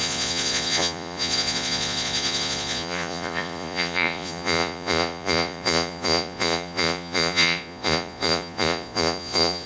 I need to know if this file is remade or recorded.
remade